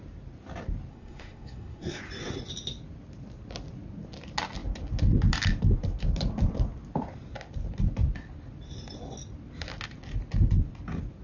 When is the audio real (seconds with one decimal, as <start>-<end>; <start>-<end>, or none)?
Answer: 0.0-0.9; 2.0-11.2